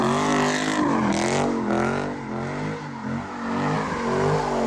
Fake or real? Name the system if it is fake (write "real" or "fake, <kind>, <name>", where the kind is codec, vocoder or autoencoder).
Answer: real